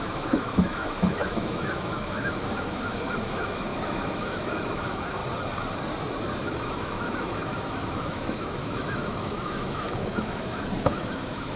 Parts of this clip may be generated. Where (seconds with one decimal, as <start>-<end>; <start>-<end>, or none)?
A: 0.0-5.2; 6.4-11.6